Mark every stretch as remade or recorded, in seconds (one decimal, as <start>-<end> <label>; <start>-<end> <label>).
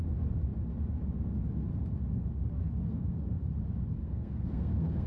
0.0-2.8 recorded; 2.8-3.4 remade; 3.4-4.0 recorded; 4.0-5.1 remade